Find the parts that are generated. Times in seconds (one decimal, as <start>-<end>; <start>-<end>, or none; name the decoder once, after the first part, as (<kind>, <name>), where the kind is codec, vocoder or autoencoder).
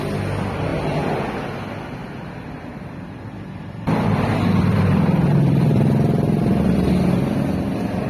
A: 2.0-6.9 (vocoder, BigVGAN v2)